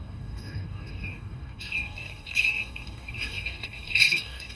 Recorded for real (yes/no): no